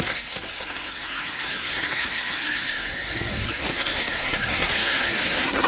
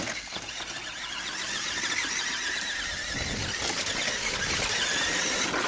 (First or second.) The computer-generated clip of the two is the first